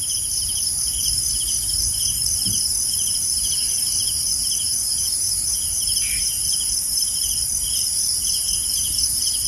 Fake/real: fake